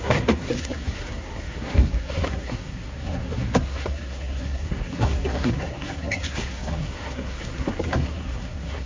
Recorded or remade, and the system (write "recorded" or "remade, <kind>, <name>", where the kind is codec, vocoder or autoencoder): remade, codec, SNAC